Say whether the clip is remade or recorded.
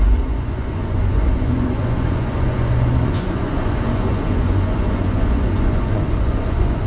remade